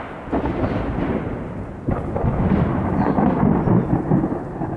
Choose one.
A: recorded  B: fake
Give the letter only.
A